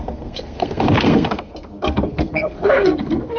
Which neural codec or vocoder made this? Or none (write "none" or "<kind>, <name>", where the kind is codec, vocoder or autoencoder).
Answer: codec, SNAC